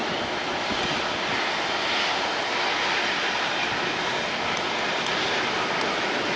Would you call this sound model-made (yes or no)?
no